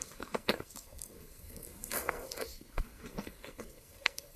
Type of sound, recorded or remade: remade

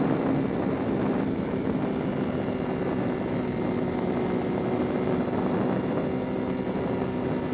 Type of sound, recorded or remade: recorded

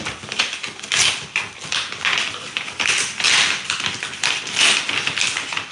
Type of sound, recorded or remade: recorded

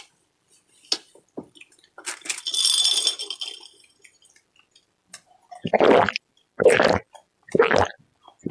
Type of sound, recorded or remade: recorded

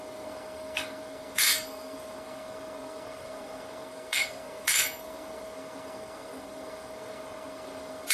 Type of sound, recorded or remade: remade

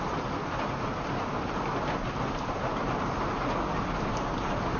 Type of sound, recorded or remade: recorded